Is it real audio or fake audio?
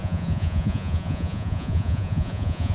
fake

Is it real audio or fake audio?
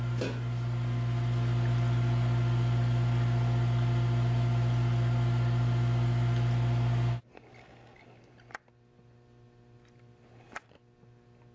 real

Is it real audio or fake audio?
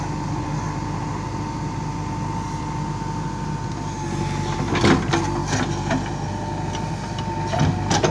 real